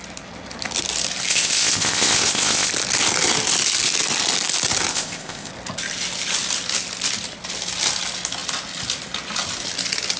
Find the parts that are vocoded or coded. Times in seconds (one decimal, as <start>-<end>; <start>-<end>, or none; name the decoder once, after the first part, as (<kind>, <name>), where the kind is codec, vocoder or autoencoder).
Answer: 1.3-2.7 (codec, ZipCodec); 4.9-5.5

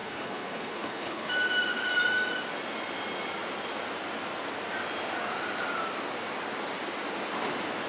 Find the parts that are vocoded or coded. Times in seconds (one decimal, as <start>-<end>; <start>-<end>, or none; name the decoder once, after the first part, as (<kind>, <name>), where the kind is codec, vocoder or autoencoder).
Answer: 0.0-1.3 (codec, HILCodec)

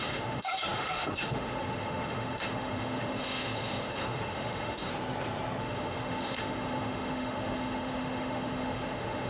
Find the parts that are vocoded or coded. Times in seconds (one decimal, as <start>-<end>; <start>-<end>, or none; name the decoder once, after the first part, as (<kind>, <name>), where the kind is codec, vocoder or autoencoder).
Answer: 0.0-4.9 (autoencoder, DAC-VAE); 5.6-9.3

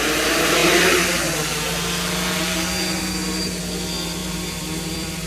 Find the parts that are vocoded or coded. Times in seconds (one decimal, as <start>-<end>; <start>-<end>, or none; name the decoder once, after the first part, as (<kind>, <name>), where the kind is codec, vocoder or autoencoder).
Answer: 4.2-5.3 (vocoder, BigVGAN v2)

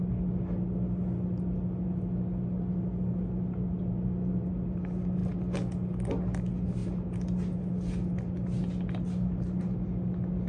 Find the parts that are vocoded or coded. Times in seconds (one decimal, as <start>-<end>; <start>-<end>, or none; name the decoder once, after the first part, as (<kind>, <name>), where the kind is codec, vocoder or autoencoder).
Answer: none

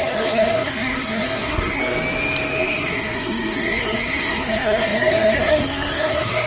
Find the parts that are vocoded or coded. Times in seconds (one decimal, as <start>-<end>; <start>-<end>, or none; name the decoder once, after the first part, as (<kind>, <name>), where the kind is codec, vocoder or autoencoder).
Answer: 0.0-1.8 (codec, SNAC); 2.6-6.5